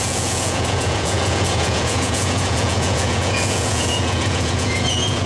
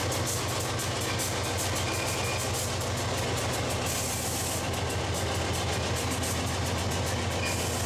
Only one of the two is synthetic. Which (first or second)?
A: first